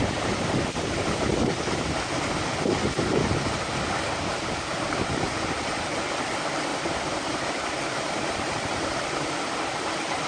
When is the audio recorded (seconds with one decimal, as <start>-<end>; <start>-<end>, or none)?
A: 0.0-6.7; 8.1-10.3